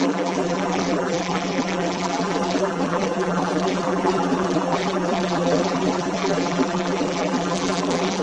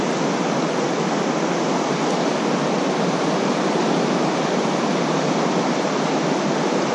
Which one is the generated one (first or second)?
first